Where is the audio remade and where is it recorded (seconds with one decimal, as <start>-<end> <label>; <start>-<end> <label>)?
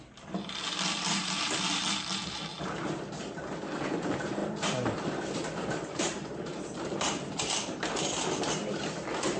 0.0-2.5 remade; 2.5-3.4 recorded; 3.4-9.4 remade